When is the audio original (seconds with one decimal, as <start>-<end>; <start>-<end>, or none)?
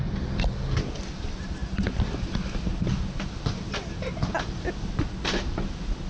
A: 0.0-6.1